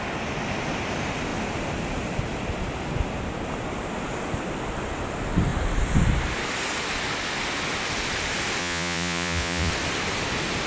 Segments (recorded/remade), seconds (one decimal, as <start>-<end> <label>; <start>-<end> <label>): 0.0-8.6 recorded; 8.6-9.7 remade; 9.7-10.7 recorded